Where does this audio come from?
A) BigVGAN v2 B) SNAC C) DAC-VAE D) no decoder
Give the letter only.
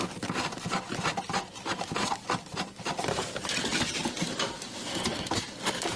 D